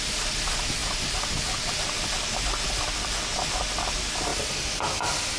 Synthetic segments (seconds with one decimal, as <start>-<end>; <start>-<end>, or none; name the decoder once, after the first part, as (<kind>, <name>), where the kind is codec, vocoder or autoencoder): none